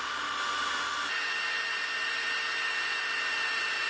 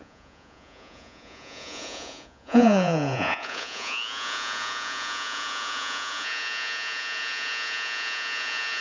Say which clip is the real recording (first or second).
first